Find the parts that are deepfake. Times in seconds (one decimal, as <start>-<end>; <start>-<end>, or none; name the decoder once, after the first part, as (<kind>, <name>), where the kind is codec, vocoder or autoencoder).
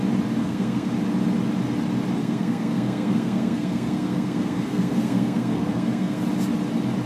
0.4-0.9 (codec, SNAC); 2.2-6.2